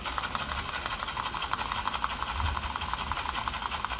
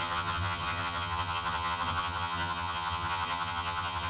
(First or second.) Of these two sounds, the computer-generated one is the second